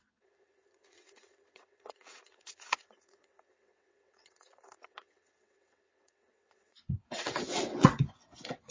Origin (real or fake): fake